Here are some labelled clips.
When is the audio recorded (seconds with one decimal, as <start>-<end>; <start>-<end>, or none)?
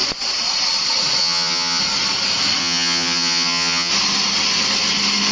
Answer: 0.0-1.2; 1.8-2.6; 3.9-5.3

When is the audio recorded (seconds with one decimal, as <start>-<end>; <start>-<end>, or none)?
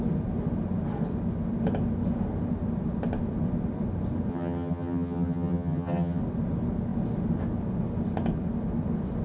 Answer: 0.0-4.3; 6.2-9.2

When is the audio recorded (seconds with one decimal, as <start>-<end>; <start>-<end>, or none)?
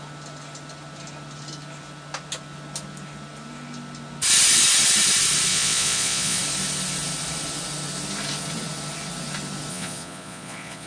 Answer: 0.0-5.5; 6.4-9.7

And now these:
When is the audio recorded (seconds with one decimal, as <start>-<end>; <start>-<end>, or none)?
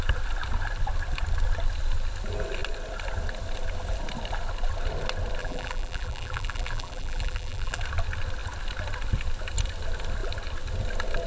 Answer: 0.0-5.4; 7.8-11.3